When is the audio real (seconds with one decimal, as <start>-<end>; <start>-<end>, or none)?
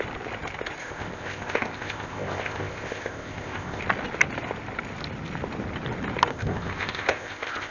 0.0-0.8; 3.8-6.3